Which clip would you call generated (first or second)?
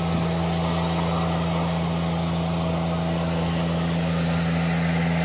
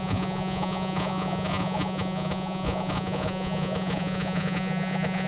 second